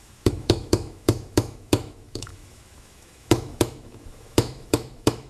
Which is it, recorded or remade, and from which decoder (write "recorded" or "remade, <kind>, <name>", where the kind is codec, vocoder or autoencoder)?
remade, autoencoder, DAC-VAE